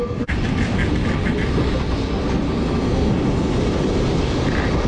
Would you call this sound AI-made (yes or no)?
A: no